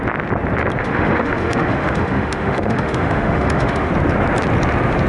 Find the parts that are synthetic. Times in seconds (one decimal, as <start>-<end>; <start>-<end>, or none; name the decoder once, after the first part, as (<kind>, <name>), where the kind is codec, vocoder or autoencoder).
0.8-3.9 (autoencoder, DAC-VAE)